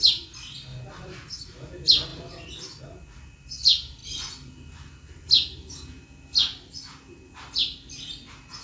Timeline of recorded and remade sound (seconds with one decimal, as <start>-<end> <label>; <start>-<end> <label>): 0.0-0.7 recorded; 0.7-1.7 remade; 1.7-8.6 recorded